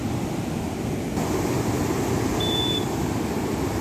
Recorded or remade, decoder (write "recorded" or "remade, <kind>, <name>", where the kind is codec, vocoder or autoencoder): recorded